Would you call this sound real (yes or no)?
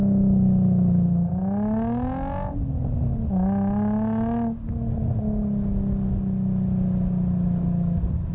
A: yes